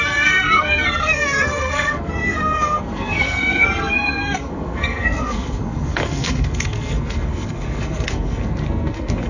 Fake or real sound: fake